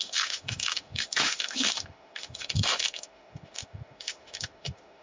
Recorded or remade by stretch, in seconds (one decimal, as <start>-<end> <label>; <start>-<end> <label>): 0.0-5.0 remade